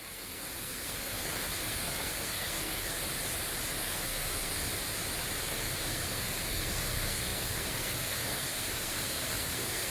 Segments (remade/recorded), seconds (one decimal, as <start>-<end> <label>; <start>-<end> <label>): 0.0-3.0 remade; 3.0-3.8 recorded; 3.8-4.7 remade; 4.7-5.4 recorded; 5.4-9.9 remade